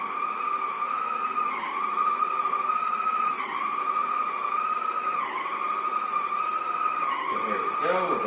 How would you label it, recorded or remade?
recorded